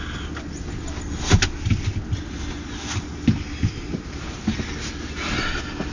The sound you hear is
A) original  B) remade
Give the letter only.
A